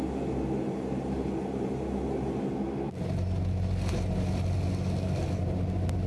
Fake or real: real